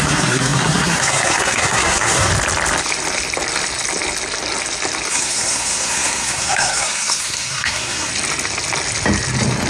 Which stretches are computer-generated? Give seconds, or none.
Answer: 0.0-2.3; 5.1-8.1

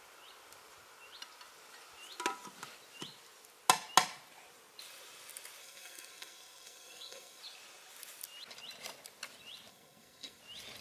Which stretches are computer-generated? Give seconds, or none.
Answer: 5.6-7.4; 9.7-10.4

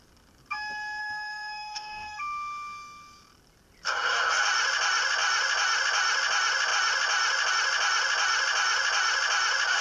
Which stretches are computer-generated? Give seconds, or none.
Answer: 1.0-2.2

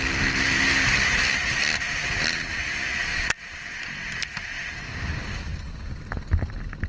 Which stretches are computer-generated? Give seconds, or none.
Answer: none

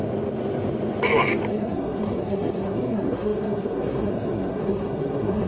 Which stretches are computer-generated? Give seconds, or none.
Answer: 1.5-5.5

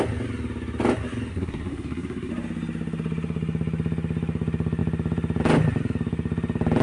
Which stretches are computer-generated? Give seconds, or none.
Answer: 1.3-2.3

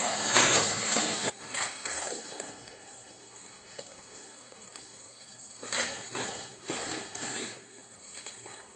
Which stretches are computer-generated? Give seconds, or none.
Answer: 0.0-8.8